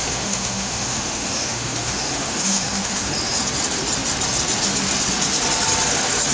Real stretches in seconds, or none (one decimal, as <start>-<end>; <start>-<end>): 3.1-6.3